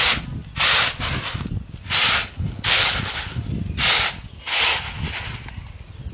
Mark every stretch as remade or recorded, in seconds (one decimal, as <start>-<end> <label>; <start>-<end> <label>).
0.0-2.3 recorded; 2.3-3.4 remade; 3.4-6.1 recorded